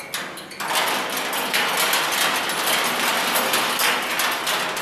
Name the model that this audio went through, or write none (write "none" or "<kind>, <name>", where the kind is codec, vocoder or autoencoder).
none